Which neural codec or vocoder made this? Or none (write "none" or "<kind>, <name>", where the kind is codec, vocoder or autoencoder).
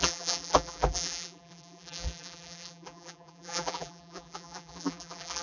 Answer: vocoder, BigVGAN v2